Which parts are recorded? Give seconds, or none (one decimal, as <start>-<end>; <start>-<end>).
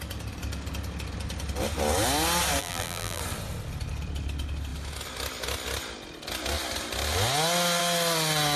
0.0-2.6; 3.2-8.6